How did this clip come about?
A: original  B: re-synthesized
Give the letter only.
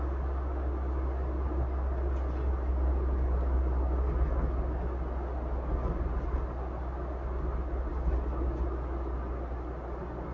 A